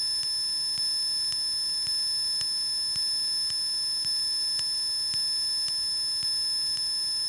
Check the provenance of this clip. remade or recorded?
recorded